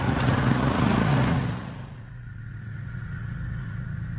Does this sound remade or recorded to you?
remade